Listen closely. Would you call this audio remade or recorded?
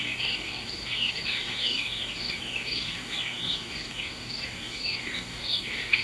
remade